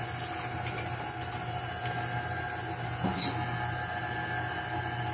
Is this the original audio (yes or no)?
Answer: yes